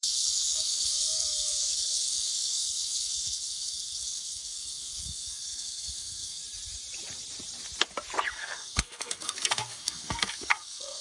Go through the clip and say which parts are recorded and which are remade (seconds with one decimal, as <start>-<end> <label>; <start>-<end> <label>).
0.0-6.4 remade; 6.4-8.3 recorded; 8.3-11.0 remade